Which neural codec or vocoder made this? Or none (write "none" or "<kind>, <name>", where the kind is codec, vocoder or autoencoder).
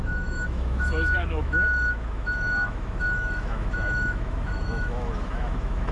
autoencoder, DAC-VAE